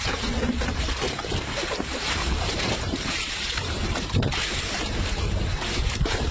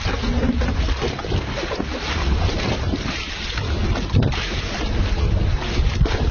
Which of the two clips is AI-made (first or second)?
first